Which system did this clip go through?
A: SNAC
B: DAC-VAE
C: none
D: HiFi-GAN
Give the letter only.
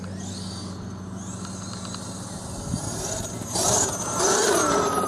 C